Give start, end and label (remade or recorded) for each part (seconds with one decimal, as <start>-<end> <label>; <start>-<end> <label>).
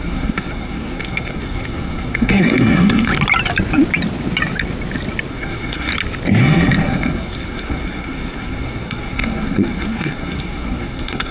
0.0-3.1 remade; 3.1-5.3 recorded; 5.3-5.9 remade; 5.9-6.4 recorded; 6.4-11.3 remade